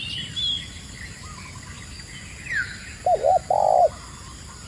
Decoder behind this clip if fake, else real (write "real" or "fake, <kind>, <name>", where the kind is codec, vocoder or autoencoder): real